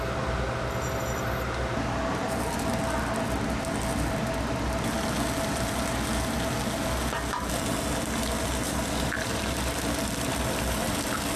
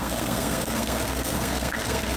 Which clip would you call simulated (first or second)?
second